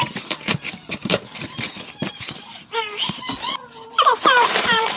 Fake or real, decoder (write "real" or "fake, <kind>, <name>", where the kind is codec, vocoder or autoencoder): fake, vocoder, BigVGAN v2